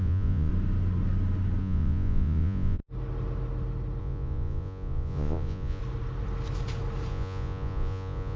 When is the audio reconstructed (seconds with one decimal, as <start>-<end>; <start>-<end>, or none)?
0.0-0.5; 1.6-2.8; 4.0-5.8; 7.1-8.4